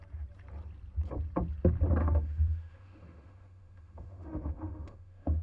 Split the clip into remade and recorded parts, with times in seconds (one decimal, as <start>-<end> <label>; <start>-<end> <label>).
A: 0.0-2.0 recorded; 2.0-5.4 remade

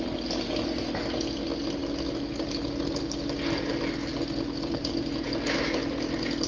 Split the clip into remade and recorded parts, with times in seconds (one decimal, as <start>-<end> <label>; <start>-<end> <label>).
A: 0.0-1.8 remade; 1.8-3.7 recorded; 3.7-6.5 remade

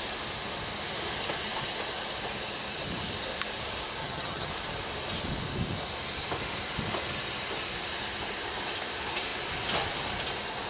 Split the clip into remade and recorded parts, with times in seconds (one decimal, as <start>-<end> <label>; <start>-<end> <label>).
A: 0.0-4.0 recorded; 4.0-4.5 remade; 4.5-10.7 recorded

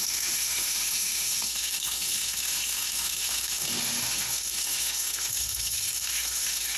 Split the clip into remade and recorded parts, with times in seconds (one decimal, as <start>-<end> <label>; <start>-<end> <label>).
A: 0.0-6.8 remade

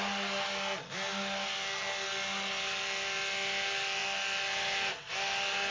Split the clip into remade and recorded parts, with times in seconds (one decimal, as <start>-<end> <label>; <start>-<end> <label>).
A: 0.0-5.7 recorded

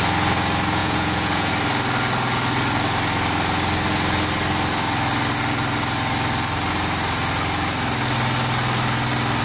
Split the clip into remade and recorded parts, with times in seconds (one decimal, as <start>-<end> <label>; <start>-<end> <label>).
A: 0.0-0.8 recorded; 0.8-1.5 remade; 1.5-9.4 recorded